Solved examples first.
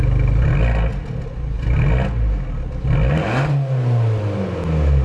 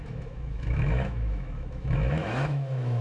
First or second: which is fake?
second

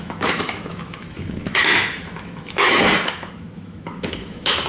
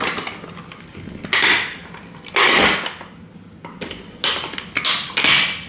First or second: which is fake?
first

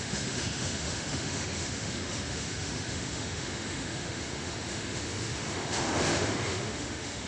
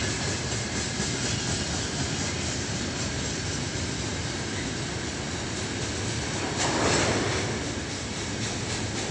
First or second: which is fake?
first